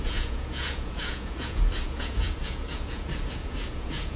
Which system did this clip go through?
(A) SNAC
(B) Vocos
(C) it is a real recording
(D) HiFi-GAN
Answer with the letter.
B